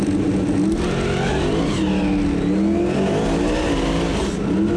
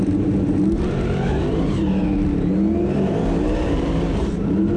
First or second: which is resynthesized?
second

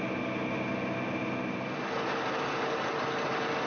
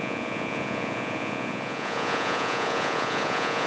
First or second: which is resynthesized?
second